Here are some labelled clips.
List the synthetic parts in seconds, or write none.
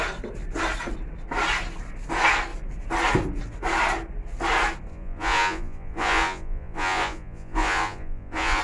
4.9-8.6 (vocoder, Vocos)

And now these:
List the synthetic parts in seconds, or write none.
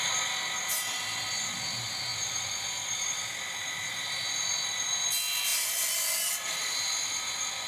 none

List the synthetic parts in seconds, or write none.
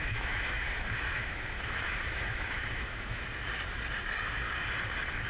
0.0-3.2 (autoencoder, DAC-VAE)